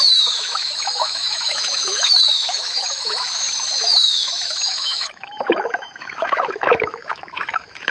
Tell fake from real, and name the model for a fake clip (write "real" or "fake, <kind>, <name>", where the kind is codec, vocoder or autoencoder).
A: fake, autoencoder, DAC-VAE